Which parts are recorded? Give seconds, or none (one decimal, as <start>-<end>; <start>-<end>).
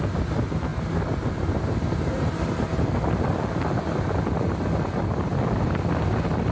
0.0-6.5